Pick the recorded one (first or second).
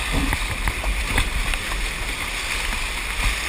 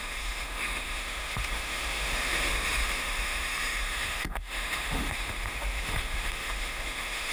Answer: first